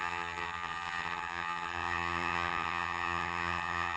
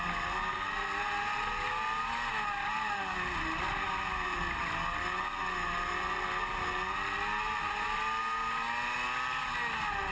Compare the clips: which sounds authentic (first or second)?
second